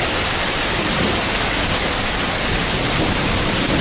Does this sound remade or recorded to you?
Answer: recorded